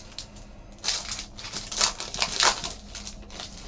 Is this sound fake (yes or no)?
no